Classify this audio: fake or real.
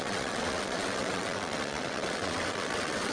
fake